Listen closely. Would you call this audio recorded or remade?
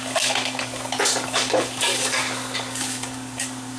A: remade